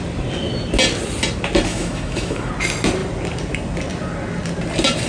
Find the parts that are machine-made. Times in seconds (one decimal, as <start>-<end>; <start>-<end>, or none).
1.7-2.5